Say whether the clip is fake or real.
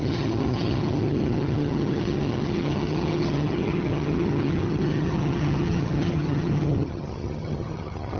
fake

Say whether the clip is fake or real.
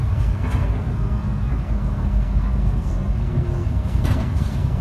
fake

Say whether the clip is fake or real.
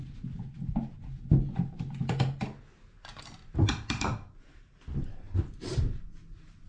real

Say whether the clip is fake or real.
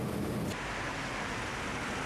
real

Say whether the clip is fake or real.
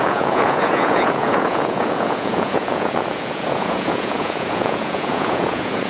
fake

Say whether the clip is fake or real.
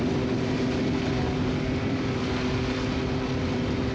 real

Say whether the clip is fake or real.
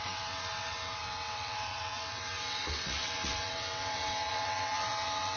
fake